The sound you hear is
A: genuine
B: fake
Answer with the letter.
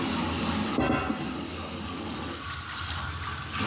A